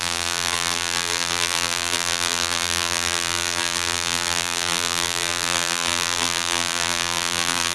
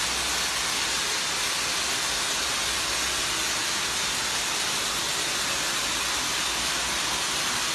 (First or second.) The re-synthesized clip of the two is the first